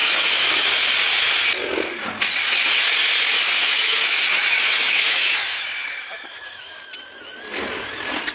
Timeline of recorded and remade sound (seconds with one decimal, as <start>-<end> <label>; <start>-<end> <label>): 0.0-0.7 remade; 0.7-3.6 recorded; 3.6-6.8 remade; 6.8-8.3 recorded